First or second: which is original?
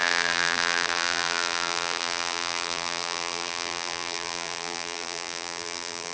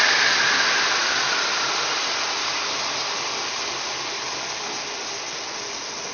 second